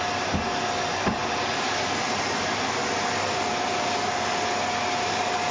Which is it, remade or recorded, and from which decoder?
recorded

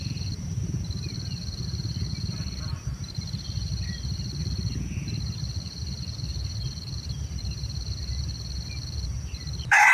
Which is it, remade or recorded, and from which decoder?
remade, vocoder, BigVGAN v2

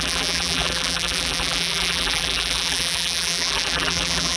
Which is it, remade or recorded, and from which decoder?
remade, vocoder, BigVGAN v2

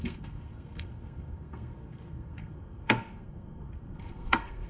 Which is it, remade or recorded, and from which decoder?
remade, codec, SNAC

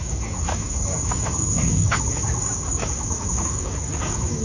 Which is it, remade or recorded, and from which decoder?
remade, codec, DAC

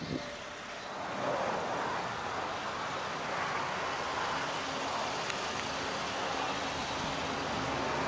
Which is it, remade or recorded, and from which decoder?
recorded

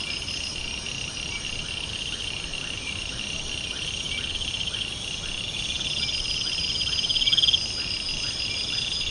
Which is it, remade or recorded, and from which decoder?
recorded